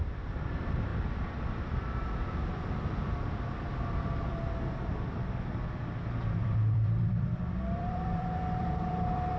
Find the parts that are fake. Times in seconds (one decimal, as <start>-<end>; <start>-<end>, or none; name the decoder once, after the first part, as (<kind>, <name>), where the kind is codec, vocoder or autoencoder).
0.0-0.9 (vocoder, BigVGAN v2); 6.1-9.4